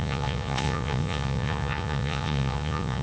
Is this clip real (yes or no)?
no